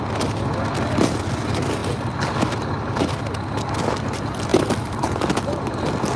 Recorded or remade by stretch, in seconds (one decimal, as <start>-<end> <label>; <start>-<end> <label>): 0.0-4.5 recorded; 4.5-5.3 remade; 5.3-6.2 recorded